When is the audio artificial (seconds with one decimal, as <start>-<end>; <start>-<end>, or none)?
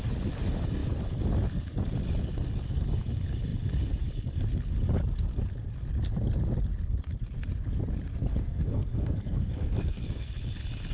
8.3-10.3